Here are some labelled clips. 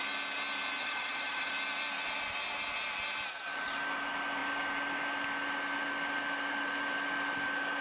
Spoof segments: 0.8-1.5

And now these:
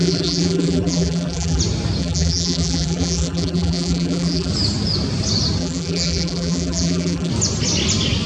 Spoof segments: 0.0-1.6; 2.0-4.5; 5.6-7.3

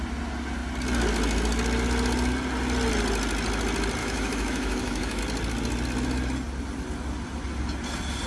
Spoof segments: 4.0-5.2

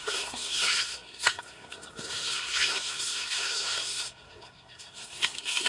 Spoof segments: 0.0-5.7